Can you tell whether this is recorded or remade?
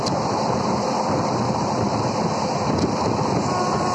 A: recorded